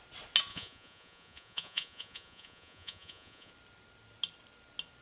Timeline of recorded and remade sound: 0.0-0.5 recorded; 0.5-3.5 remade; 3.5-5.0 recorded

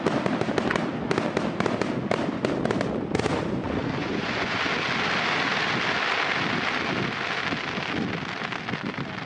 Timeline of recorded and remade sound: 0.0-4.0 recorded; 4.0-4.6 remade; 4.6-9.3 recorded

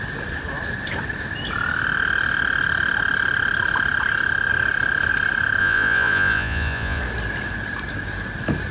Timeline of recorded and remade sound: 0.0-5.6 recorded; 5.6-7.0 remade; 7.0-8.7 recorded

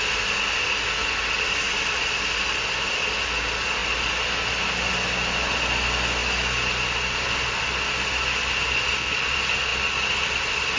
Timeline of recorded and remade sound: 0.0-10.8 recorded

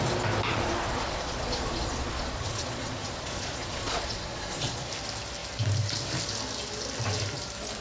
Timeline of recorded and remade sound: 0.0-0.5 recorded; 0.5-4.9 remade; 4.9-7.8 recorded

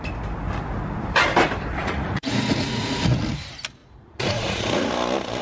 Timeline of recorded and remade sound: 0.0-1.7 recorded; 1.7-3.2 remade; 3.2-3.8 recorded; 3.8-4.9 remade; 4.9-5.4 recorded